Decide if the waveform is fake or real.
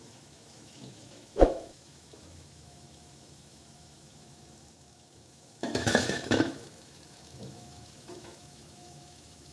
fake